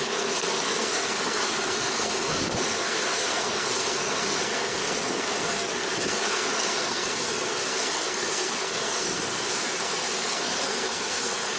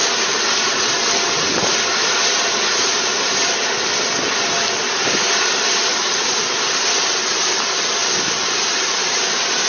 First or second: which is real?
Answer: second